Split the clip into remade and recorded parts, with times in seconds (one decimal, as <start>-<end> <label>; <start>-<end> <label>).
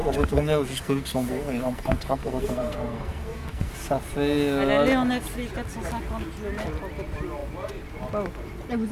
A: 0.0-3.7 remade; 3.7-8.9 recorded